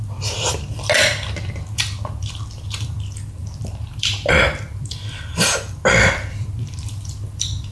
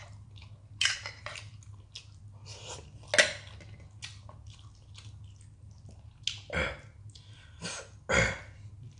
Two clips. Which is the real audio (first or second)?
second